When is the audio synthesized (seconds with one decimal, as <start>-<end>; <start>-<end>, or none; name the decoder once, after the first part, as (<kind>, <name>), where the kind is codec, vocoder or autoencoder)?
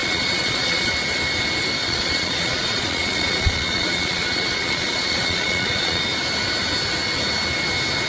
0.0-0.9 (vocoder, Vocos); 1.8-6.0